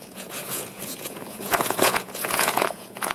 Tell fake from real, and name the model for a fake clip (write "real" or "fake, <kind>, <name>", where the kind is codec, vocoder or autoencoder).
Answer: fake, vocoder, Vocos